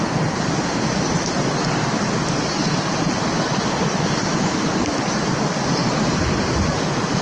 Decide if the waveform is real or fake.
real